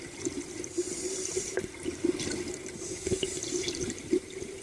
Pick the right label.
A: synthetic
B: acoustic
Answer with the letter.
A